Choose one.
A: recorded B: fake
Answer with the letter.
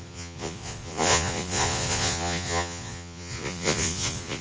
B